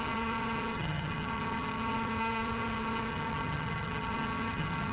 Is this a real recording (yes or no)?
no